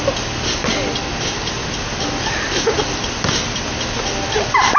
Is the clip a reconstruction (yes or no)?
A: no